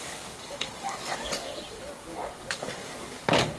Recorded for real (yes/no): no